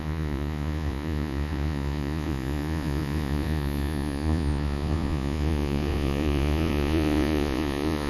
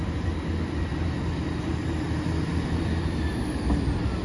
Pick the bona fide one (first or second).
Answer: second